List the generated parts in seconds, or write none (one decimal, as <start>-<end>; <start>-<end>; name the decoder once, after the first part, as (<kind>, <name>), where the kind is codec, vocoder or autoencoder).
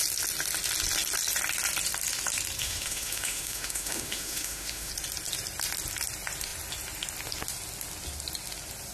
2.6-4.9 (autoencoder, DAC-VAE)